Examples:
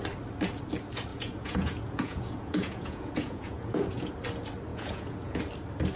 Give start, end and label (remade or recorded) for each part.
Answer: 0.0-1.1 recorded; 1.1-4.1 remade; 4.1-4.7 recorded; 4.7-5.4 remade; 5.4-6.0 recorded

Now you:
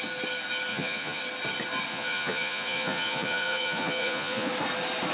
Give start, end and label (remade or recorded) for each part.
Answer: 0.0-0.7 recorded; 0.7-1.2 remade; 1.2-1.9 recorded; 1.9-4.5 remade; 4.5-5.1 recorded

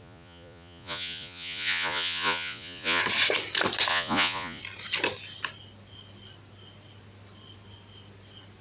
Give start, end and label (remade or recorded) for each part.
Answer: 0.0-3.0 remade; 3.0-3.9 recorded; 3.9-4.6 remade; 4.6-8.6 recorded